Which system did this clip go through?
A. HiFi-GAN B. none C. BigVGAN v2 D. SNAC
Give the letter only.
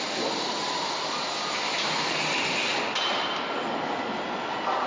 B